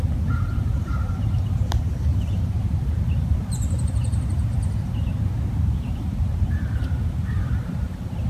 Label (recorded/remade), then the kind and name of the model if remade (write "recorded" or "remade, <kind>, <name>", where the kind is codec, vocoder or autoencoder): remade, vocoder, BigVGAN v2